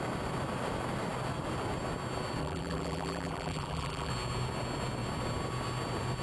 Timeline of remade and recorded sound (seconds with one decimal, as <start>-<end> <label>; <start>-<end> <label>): 0.0-2.4 recorded; 2.4-4.1 remade; 4.1-6.2 recorded